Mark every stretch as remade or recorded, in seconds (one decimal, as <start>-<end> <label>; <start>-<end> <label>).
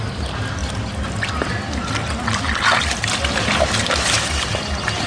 0.0-5.1 recorded